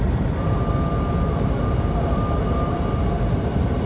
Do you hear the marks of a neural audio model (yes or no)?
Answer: no